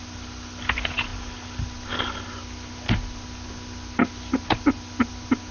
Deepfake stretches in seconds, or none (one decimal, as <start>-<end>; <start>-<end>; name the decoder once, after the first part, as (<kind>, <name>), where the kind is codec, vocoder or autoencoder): none